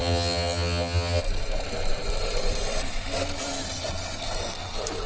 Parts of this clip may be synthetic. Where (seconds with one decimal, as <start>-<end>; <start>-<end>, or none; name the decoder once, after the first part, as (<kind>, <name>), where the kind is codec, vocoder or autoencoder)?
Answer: 0.0-1.2 (vocoder, HiFi-GAN)